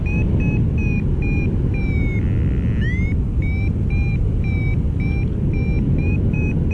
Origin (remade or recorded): recorded